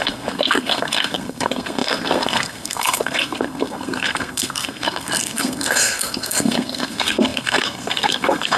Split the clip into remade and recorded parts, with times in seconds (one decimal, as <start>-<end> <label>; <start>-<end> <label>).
0.0-8.6 remade